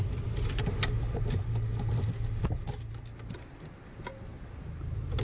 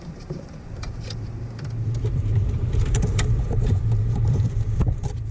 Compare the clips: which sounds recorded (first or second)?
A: first